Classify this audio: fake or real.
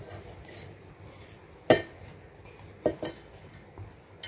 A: real